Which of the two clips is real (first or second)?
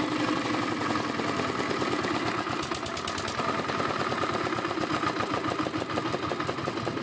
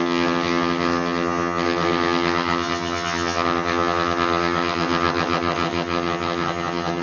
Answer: first